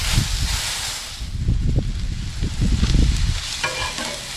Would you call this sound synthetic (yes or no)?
no